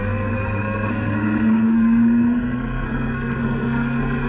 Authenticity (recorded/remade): remade